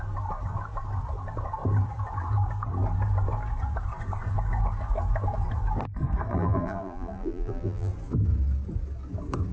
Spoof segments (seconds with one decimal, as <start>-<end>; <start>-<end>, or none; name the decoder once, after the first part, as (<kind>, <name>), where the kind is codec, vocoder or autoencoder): 6.3-7.9 (vocoder, BigVGAN v2)